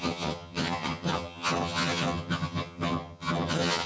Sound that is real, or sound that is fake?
fake